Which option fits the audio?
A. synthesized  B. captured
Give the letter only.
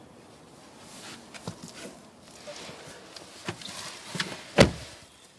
B